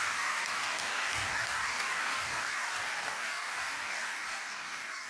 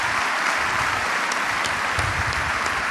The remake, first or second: first